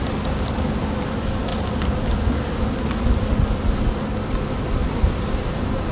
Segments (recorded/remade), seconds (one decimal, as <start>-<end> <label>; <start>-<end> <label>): 0.0-5.9 recorded